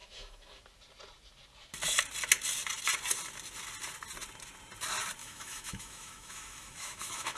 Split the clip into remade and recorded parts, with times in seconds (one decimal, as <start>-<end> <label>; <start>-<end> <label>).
0.0-0.6 remade; 0.6-5.2 recorded; 5.2-7.4 remade